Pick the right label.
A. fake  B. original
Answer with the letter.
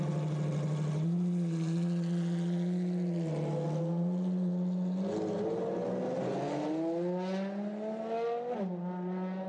B